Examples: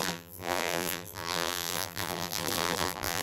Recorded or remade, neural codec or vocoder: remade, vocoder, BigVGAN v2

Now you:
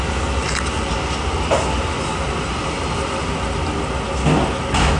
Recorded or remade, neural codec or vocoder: recorded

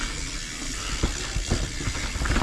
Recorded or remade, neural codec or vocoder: recorded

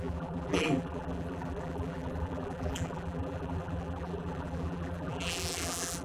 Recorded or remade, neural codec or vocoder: remade, vocoder, BigVGAN v2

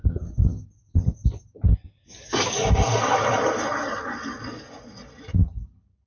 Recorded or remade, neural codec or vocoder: recorded